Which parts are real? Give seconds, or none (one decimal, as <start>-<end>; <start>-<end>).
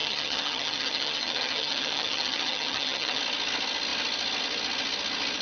3.2-5.4